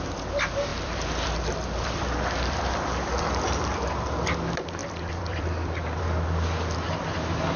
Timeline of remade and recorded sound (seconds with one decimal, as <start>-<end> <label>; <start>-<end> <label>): 0.0-0.7 recorded; 0.7-3.4 remade; 3.4-4.8 recorded; 4.8-6.0 remade; 6.0-7.6 recorded